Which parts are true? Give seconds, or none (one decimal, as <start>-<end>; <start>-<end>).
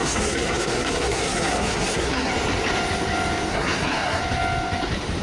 2.3-3.5; 4.2-5.2